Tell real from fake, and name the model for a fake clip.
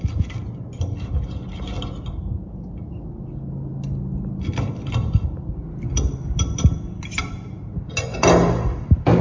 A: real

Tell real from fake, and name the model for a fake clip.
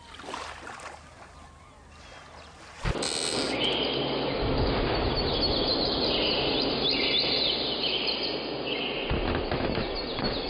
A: real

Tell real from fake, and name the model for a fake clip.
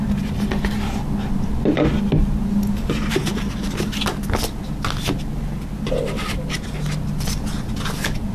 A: real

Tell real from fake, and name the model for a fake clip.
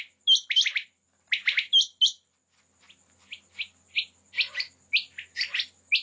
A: real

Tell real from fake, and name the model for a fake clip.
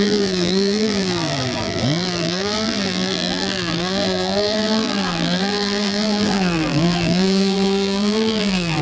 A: fake, vocoder, BigVGAN v2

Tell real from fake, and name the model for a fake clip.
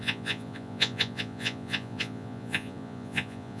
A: fake, vocoder, Vocos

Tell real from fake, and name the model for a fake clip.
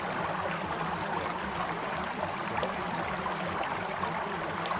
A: real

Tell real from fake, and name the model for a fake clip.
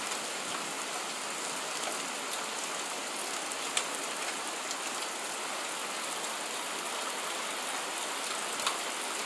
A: real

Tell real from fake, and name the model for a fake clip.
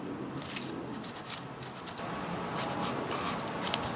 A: real